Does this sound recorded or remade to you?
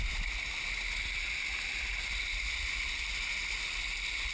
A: recorded